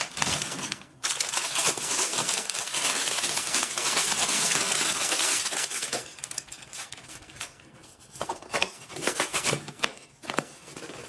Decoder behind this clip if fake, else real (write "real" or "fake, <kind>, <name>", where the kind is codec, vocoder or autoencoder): fake, codec, SNAC